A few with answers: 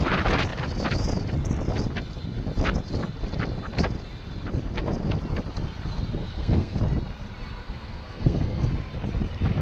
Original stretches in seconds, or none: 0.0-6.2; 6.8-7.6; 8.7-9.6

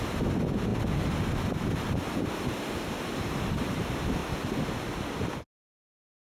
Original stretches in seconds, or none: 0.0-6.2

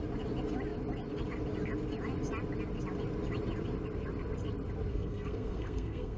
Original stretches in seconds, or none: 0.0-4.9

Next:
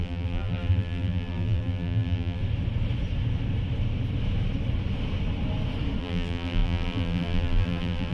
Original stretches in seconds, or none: 2.4-6.0

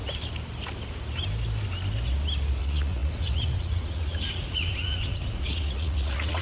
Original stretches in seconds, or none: 0.0-2.6